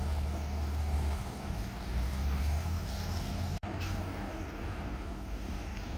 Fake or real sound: fake